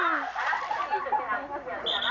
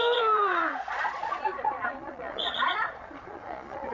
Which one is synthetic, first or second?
second